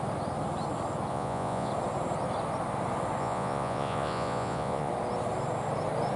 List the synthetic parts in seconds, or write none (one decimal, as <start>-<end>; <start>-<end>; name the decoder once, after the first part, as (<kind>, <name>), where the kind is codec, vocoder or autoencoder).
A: 1.1-1.7 (vocoder, Vocos); 3.2-4.9